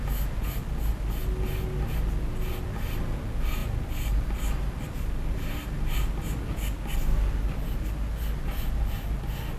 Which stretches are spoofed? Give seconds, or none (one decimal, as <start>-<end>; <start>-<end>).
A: none